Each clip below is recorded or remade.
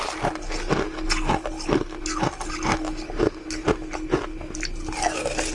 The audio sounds recorded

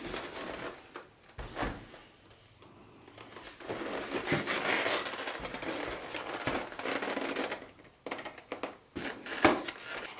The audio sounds recorded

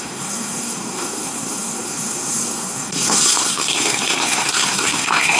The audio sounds remade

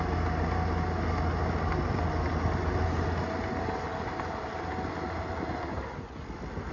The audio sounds recorded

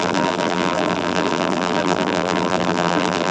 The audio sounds remade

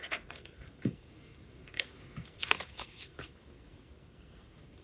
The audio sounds remade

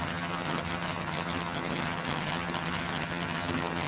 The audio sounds remade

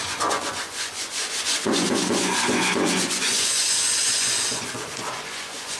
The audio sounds remade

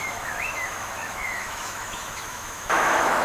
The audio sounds remade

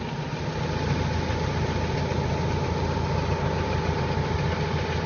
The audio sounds recorded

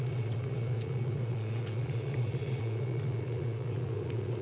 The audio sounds remade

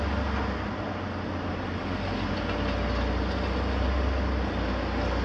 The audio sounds recorded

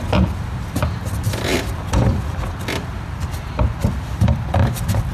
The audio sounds remade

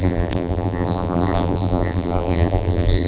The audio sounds remade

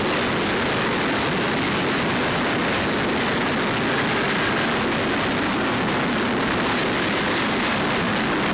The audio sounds recorded